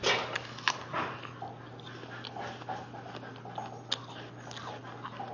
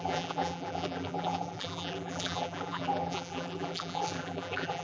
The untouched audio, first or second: first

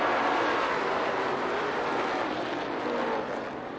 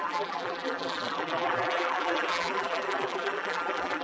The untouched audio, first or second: first